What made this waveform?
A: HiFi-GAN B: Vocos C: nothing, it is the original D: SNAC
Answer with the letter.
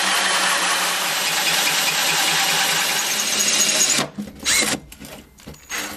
C